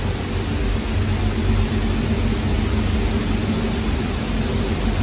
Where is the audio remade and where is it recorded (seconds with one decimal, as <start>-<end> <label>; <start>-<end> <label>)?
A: 0.0-5.0 recorded